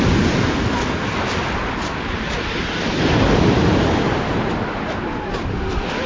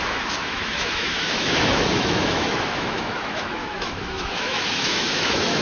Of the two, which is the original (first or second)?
first